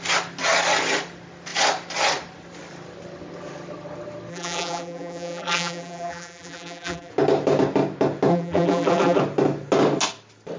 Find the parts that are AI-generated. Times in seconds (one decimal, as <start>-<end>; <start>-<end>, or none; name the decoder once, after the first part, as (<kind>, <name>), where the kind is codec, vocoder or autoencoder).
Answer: 4.3-7.1 (vocoder, BigVGAN v2); 8.3-9.2